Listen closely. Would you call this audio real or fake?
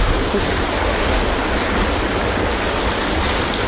real